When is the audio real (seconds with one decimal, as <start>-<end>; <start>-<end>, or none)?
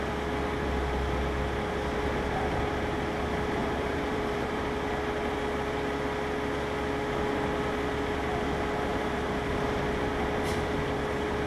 0.0-3.6; 4.6-8.9; 9.8-11.5